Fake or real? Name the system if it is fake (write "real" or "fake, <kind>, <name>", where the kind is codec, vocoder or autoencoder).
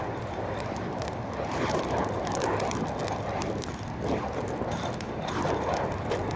real